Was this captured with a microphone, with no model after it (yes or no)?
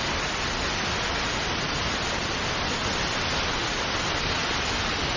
yes